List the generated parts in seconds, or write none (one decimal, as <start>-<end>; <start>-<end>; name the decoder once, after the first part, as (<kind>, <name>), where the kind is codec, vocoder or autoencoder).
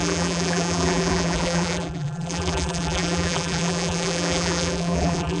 0.0-5.4 (vocoder, BigVGAN v2)